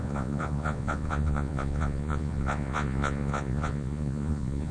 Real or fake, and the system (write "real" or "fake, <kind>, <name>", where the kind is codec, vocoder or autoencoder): fake, vocoder, Vocos